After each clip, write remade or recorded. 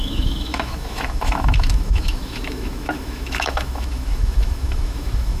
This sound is remade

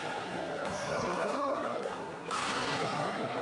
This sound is remade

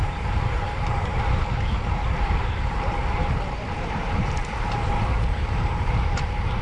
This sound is remade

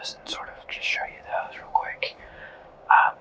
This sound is remade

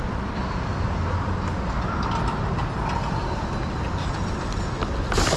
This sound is recorded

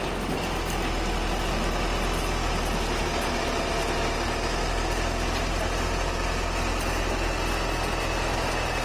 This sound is recorded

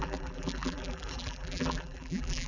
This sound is remade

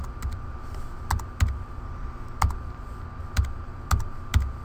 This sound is recorded